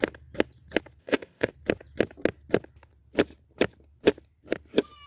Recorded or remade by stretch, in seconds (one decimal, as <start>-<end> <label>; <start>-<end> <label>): 0.0-1.0 recorded; 1.0-1.5 remade; 1.5-5.1 recorded

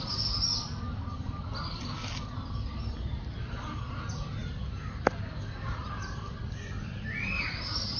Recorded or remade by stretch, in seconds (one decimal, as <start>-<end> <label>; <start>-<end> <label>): 0.0-8.0 recorded

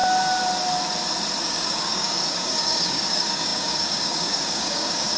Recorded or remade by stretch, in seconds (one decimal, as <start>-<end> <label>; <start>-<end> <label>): 0.0-1.4 recorded; 1.4-5.2 remade

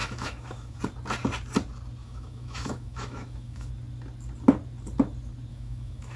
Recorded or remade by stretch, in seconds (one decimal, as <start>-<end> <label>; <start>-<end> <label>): 0.0-0.8 remade; 0.8-2.0 recorded; 2.0-3.7 remade; 3.7-5.5 recorded; 5.5-6.2 remade

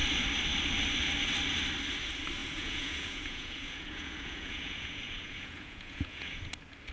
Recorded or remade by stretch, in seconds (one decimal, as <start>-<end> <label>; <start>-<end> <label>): 0.0-2.4 recorded; 2.4-6.5 remade; 6.5-6.9 recorded

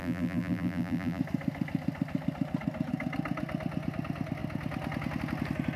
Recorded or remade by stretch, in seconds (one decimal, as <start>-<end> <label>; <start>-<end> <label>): 0.0-1.2 remade; 1.2-5.8 recorded

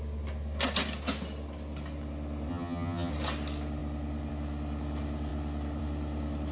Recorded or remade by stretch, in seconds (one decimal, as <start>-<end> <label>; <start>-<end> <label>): 0.0-2.5 recorded; 2.5-3.1 remade; 3.1-6.5 recorded